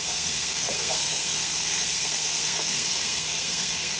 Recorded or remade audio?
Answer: remade